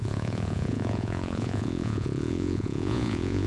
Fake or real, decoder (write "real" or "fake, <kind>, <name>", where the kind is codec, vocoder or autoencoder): fake, vocoder, Vocos